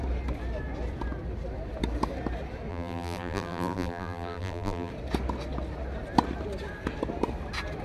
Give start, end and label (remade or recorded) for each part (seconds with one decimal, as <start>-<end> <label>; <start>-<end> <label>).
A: 0.0-2.7 recorded; 2.7-4.9 remade; 4.9-7.8 recorded